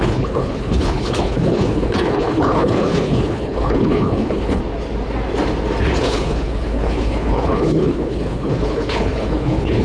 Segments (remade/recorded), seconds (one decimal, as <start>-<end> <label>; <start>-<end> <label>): 0.0-4.6 remade; 4.6-6.0 recorded; 6.0-9.8 remade

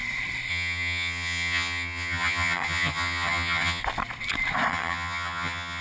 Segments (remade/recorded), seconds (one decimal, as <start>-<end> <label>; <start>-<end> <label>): 0.0-0.5 recorded; 0.5-3.8 remade; 3.8-4.7 recorded; 4.7-5.8 remade

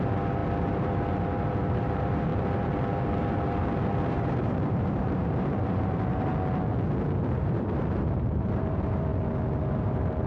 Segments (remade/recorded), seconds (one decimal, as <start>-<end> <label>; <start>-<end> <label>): 0.0-6.3 remade; 6.3-7.0 recorded; 7.0-9.1 remade; 9.1-9.7 recorded; 9.7-10.3 remade

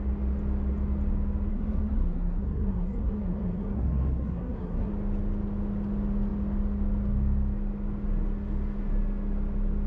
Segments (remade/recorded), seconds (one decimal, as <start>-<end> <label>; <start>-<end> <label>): 0.0-1.5 recorded; 1.5-4.9 remade; 4.9-9.9 recorded

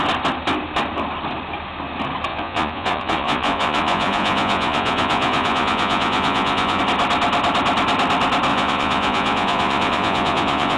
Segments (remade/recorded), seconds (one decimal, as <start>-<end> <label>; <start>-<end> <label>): 0.0-2.3 recorded; 2.3-6.8 remade; 6.8-8.5 recorded; 8.5-10.8 remade

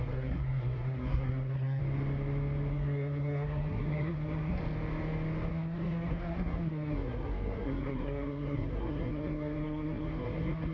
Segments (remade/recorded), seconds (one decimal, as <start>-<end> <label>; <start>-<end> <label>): 0.0-1.8 remade; 1.8-2.7 recorded; 2.7-4.6 remade; 4.6-5.5 recorded; 5.5-10.7 remade